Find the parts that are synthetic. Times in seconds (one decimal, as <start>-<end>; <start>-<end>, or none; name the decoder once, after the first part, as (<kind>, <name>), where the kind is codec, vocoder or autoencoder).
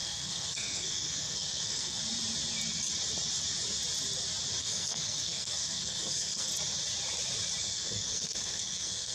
0.0-2.0 (codec, SNAC); 4.6-6.5; 7.6-9.1